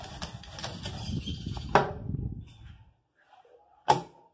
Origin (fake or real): real